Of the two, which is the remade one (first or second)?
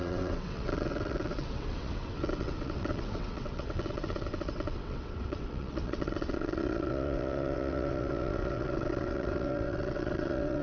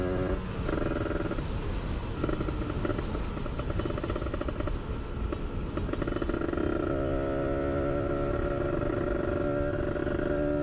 first